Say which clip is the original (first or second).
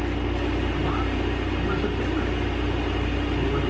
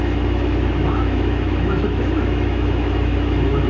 first